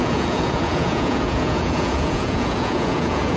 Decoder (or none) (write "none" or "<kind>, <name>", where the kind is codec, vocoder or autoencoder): vocoder, Vocos